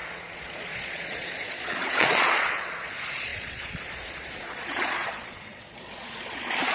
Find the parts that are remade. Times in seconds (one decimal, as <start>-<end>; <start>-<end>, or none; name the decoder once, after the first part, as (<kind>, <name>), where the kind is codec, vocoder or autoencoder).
0.0-6.7 (vocoder, Vocos)